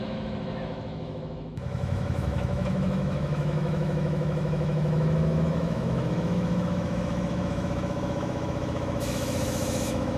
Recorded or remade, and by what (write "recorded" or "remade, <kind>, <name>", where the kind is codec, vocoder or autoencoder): remade, autoencoder, DAC-VAE